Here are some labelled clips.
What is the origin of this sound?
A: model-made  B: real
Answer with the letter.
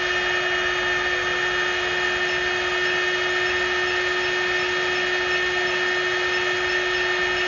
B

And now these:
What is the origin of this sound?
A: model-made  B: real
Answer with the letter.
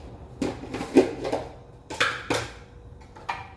B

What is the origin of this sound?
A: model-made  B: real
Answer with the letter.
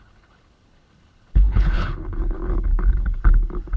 A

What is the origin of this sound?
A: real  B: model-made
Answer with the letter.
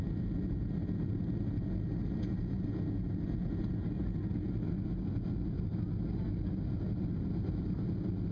A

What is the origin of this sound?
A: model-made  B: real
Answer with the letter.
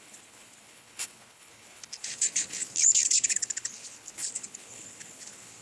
A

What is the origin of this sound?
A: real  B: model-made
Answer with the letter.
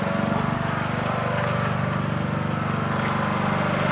A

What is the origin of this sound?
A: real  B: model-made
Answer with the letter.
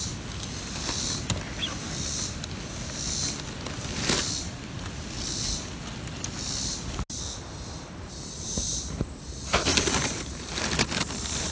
A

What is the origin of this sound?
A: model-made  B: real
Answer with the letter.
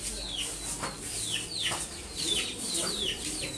B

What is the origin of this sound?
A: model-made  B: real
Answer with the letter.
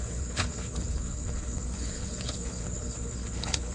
A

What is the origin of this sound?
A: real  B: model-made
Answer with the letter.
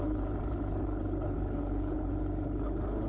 B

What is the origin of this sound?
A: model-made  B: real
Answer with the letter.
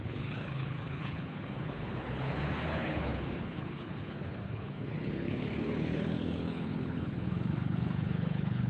A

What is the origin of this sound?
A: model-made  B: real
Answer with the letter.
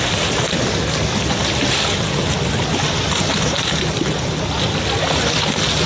B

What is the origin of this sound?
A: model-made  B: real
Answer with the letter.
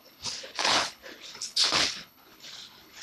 A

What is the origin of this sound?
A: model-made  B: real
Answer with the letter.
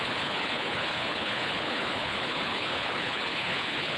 A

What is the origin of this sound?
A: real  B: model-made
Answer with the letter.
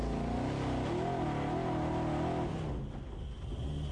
A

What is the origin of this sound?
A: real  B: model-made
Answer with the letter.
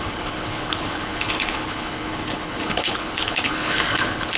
B